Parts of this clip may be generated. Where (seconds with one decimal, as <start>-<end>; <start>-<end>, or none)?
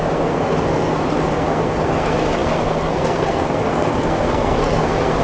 0.0-5.2